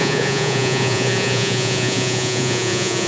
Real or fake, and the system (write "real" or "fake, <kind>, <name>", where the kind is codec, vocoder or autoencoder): fake, vocoder, Vocos